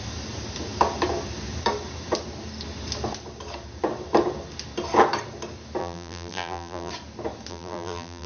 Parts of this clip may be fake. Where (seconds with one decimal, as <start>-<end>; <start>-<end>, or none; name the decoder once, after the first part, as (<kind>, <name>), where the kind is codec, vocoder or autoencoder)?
5.8-6.9 (vocoder, BigVGAN v2); 7.5-8.3